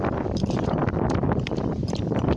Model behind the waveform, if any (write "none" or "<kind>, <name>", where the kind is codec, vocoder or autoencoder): vocoder, BigVGAN v2